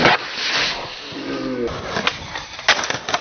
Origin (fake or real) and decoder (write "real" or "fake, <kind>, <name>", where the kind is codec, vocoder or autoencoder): real